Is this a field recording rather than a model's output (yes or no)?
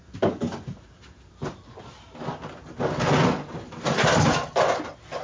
yes